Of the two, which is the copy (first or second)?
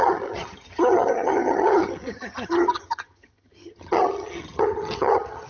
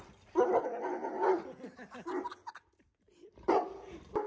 first